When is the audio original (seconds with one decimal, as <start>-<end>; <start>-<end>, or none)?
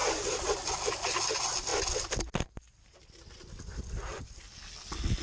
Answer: 0.5-5.2